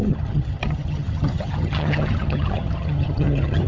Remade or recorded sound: remade